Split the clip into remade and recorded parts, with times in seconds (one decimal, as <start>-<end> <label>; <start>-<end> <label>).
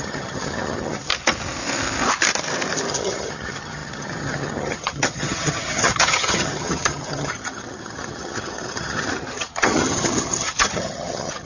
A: 0.0-1.1 remade; 1.1-2.9 recorded; 2.9-11.5 remade